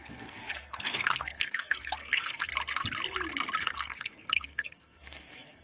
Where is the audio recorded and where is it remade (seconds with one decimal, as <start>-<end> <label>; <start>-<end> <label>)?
0.0-2.5 remade; 2.5-3.6 recorded; 3.6-5.6 remade